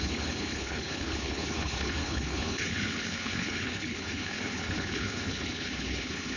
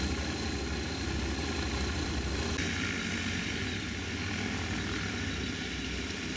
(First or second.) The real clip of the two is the second